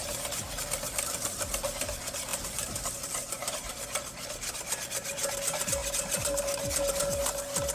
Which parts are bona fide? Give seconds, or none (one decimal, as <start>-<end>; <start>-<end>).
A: 0.0-2.3; 3.7-7.7